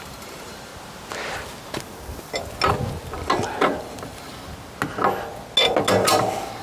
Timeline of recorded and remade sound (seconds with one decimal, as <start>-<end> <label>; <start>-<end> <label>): 0.0-0.7 remade; 0.7-3.8 recorded; 3.8-4.3 remade; 4.3-6.6 recorded